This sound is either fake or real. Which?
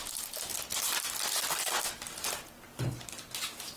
real